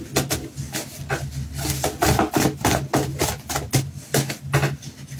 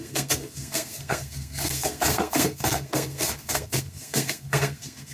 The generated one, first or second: second